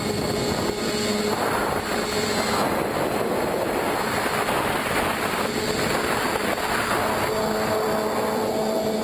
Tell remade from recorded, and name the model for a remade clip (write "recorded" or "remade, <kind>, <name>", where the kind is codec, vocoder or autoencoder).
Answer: recorded